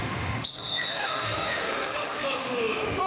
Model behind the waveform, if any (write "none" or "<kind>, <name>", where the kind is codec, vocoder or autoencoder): autoencoder, DAC-VAE